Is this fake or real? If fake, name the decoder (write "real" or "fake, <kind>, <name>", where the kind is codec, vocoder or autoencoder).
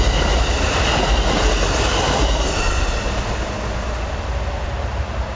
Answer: real